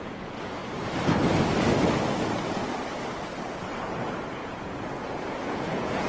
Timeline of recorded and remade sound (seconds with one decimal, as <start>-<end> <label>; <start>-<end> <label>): 0.0-0.6 remade; 0.6-4.3 recorded; 4.3-6.1 remade

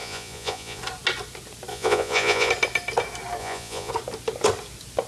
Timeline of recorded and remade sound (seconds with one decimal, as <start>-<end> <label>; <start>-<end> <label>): 0.0-0.8 remade; 0.8-1.7 recorded; 1.7-2.5 remade; 2.5-3.4 recorded; 3.4-3.9 remade; 3.9-5.1 recorded

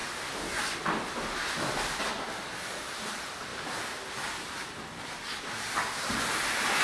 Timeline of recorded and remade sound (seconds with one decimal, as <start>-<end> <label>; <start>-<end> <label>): 0.0-3.5 recorded; 3.5-6.1 remade; 6.1-6.8 recorded

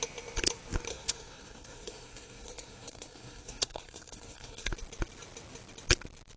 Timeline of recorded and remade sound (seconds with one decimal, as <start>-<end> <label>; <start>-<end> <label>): 0.0-0.9 recorded; 0.9-4.7 remade; 4.7-6.4 recorded

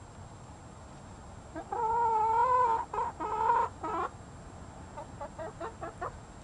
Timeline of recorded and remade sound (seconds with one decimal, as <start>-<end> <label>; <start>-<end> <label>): 0.0-6.4 recorded